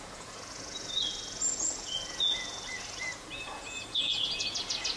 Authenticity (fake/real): fake